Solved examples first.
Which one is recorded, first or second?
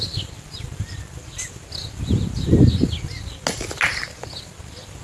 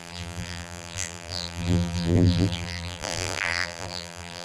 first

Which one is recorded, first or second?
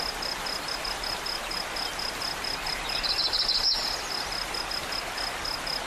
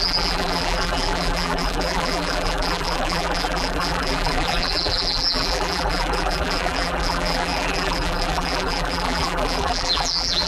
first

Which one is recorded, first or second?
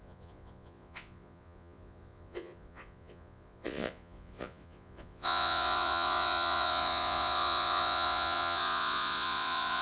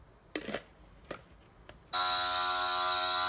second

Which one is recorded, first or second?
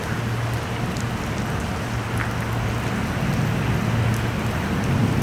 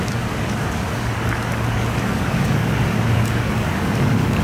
first